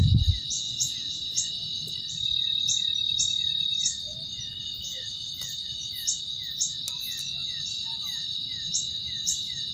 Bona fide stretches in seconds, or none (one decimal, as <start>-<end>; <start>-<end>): 0.0-3.7; 5.7-7.4